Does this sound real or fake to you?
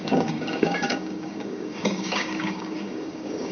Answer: fake